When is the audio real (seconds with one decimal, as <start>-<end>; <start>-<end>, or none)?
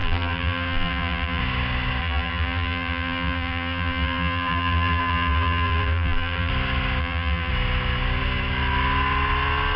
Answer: 1.4-2.0; 6.5-7.0; 7.5-9.8